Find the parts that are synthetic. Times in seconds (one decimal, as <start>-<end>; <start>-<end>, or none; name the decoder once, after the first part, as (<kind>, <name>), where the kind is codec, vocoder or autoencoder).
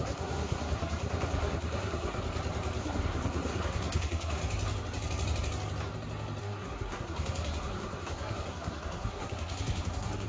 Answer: 0.0-2.2 (codec, SNAC); 2.8-4.4; 6.4-10.3